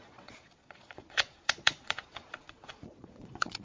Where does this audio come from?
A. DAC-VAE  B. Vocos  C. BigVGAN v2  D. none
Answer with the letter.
B